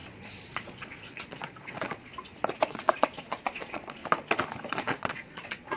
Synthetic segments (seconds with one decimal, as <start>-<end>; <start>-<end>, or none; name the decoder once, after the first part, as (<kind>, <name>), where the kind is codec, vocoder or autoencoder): 0.0-2.1 (vocoder, Vocos); 2.7-4.0; 4.7-5.8